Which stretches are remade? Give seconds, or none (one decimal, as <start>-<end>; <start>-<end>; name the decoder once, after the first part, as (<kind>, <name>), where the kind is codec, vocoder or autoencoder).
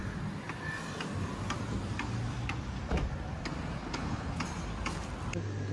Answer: 3.8-4.4 (codec, HILCodec)